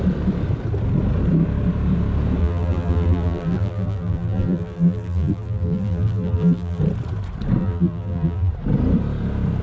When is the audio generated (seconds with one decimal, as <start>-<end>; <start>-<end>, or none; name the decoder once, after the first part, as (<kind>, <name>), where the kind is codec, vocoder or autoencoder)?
2.4-6.8 (vocoder, BigVGAN v2); 7.6-8.5

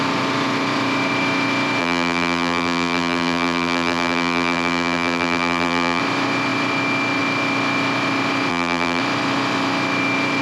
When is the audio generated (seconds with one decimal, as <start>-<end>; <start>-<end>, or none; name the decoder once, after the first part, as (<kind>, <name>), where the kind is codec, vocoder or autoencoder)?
1.8-6.0 (vocoder, BigVGAN v2); 8.5-9.0

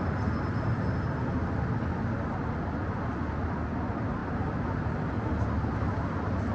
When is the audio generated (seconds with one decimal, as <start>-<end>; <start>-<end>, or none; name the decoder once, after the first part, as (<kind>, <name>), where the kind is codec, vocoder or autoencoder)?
none

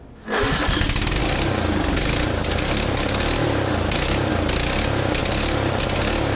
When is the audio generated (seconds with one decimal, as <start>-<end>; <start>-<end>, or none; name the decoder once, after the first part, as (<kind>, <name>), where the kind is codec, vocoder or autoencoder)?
1.2-4.3 (vocoder, BigVGAN v2)

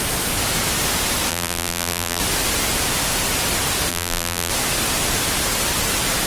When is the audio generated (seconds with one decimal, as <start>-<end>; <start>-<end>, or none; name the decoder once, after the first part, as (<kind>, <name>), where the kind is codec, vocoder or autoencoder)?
1.3-2.2 (vocoder, BigVGAN v2); 3.9-4.5

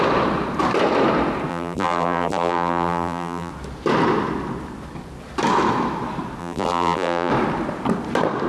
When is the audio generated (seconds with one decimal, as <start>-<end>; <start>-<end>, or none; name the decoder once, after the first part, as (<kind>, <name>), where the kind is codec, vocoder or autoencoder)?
1.5-3.5 (vocoder, BigVGAN v2); 6.4-7.3

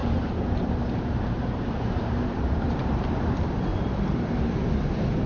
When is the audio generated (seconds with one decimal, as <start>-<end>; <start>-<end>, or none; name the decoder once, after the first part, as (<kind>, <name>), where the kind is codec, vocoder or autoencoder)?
0.0-3.2 (vocoder, BigVGAN v2); 3.7-4.7

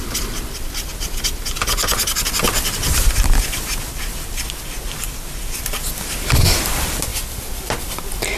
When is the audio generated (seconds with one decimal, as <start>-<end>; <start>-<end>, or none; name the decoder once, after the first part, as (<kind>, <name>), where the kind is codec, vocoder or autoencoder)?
7.1-7.8 (vocoder, BigVGAN v2)